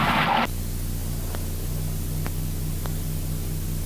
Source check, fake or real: real